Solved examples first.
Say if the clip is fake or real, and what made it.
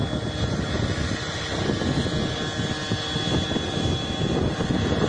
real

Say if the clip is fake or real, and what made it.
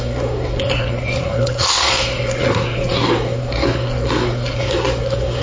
fake, codec, SNAC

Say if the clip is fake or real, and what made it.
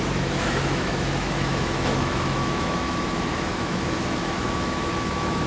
fake, autoencoder, DAC-VAE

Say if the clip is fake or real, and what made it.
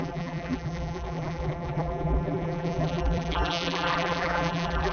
fake, vocoder, BigVGAN v2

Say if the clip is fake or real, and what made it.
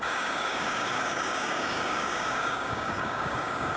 fake, codec, DAC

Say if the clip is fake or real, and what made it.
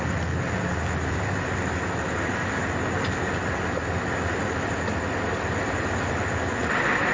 real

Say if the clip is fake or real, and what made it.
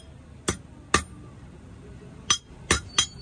real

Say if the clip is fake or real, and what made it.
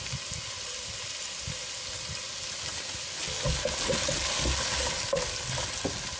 real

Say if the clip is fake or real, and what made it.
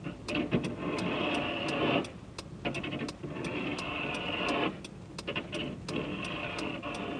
real